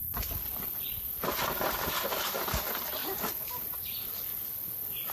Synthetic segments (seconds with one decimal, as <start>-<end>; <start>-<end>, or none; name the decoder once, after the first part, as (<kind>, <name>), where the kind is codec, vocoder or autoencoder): 3.0-3.7 (vocoder, BigVGAN v2)